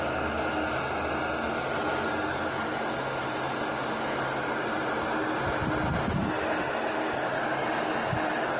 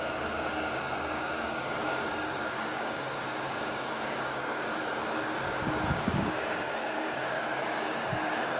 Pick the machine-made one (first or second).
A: second